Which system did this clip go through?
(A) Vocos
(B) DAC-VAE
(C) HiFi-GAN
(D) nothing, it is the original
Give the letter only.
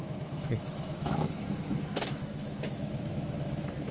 B